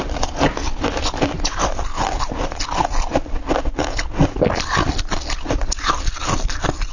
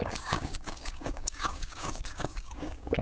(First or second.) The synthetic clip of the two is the second